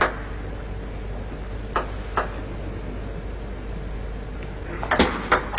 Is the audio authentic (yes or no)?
yes